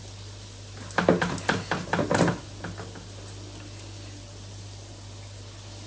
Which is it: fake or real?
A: real